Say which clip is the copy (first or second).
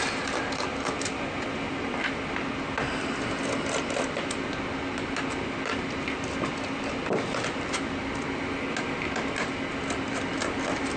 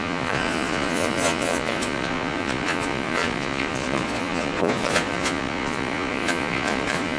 second